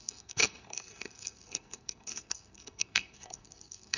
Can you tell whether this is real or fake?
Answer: fake